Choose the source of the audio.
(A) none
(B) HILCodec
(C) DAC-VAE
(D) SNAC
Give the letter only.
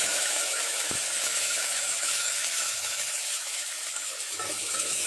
C